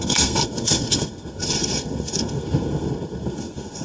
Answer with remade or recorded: remade